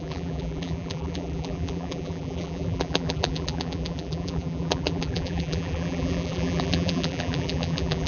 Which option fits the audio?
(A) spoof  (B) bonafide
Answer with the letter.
A